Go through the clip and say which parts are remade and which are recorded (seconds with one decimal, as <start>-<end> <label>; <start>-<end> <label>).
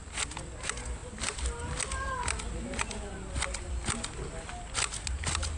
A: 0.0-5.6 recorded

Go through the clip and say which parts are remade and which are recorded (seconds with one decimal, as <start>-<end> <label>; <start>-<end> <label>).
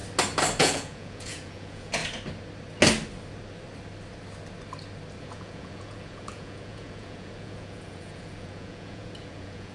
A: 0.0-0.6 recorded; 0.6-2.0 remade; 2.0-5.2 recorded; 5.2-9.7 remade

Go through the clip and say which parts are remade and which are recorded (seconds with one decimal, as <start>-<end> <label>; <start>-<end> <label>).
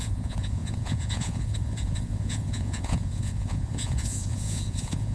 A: 0.0-5.1 remade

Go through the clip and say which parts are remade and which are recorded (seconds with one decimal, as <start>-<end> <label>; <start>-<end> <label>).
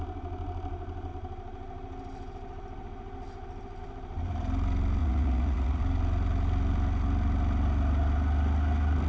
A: 0.0-5.0 recorded; 5.0-5.8 remade; 5.8-9.1 recorded